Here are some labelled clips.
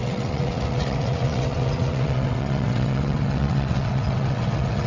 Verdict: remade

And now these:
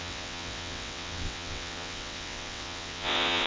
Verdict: remade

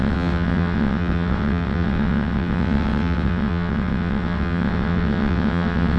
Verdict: remade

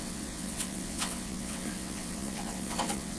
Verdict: remade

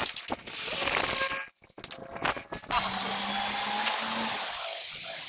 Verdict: recorded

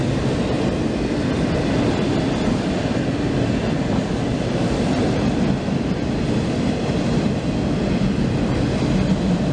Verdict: recorded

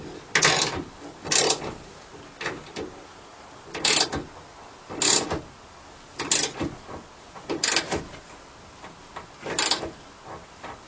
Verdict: recorded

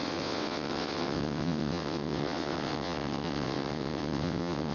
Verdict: remade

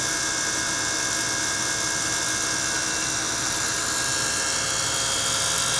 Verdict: recorded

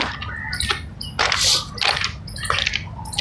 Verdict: recorded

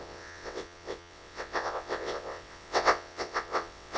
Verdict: remade